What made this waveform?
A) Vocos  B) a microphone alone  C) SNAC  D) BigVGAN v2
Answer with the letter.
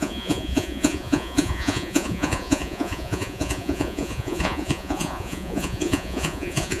A